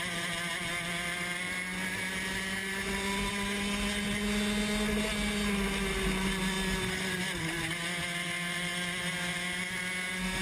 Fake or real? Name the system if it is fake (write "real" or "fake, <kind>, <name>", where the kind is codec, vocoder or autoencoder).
real